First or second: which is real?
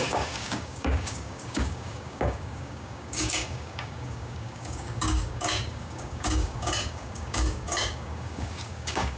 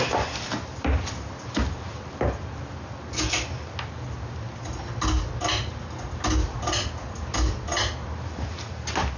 second